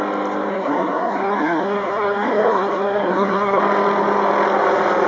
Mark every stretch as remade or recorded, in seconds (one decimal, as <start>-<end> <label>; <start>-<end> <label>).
0.0-0.5 recorded; 0.5-3.6 remade; 3.6-5.1 recorded